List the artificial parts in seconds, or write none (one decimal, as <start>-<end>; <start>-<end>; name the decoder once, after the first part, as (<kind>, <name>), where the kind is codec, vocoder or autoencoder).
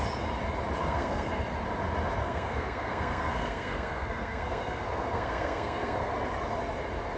0.8-1.4 (codec, SNAC); 2.2-6.1